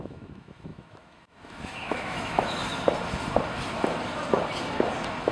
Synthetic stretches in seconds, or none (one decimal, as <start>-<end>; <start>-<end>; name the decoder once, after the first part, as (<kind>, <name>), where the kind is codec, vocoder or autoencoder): 0.0-2.6 (autoencoder, DAC-VAE)